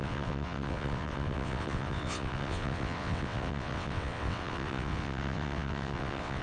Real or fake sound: fake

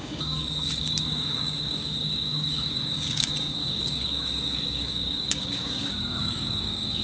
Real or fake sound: fake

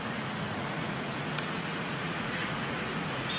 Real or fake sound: fake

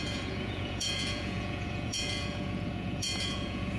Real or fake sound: fake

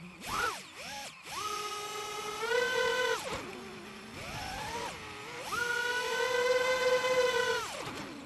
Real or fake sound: real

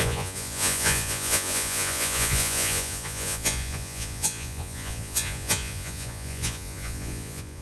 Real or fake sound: fake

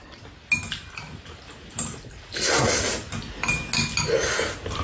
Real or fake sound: real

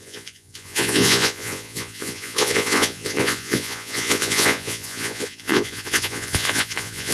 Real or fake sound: fake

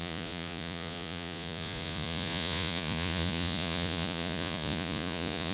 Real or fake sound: fake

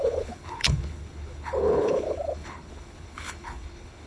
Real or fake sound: fake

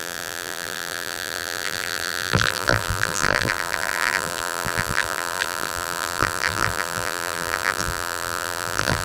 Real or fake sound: fake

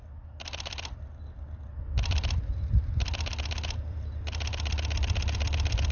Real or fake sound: real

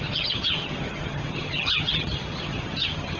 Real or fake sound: fake